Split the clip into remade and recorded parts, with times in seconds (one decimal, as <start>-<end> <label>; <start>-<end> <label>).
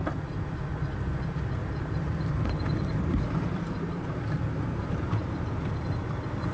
0.0-1.6 recorded; 1.6-5.5 remade; 5.5-6.5 recorded